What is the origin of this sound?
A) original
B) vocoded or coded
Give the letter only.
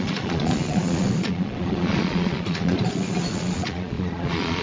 B